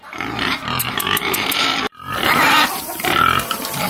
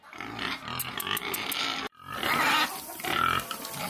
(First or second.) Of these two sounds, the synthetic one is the first